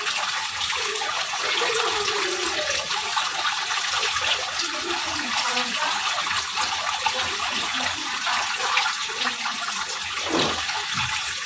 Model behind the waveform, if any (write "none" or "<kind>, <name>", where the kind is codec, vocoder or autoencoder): vocoder, Vocos